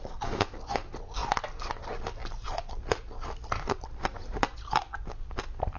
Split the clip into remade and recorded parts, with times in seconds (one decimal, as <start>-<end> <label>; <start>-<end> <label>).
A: 0.0-5.8 recorded